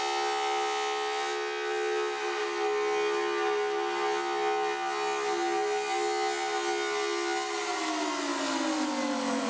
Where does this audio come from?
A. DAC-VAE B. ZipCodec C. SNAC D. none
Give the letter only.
D